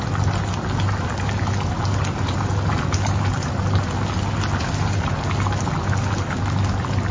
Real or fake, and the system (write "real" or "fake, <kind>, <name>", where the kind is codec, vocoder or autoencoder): real